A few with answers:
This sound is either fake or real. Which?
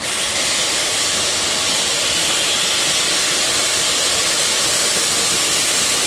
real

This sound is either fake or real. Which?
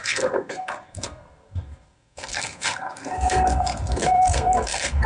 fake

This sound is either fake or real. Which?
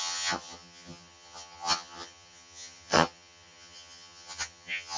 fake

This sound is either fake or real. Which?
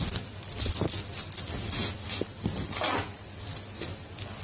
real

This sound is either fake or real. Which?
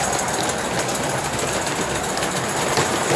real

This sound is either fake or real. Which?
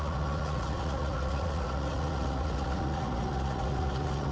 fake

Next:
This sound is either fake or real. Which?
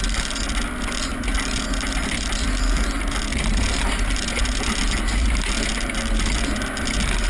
real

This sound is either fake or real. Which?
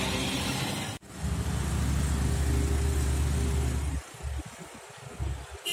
real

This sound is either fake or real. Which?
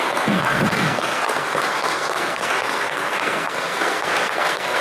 fake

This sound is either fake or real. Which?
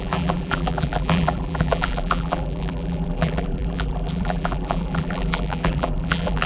fake